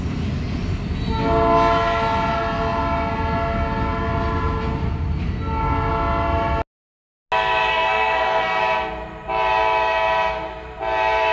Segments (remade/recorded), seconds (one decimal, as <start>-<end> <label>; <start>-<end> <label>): 0.0-7.7 recorded; 7.7-8.6 remade; 8.6-11.3 recorded